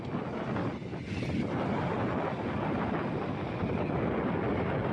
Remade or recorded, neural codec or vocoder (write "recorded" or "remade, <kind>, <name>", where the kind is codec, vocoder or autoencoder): recorded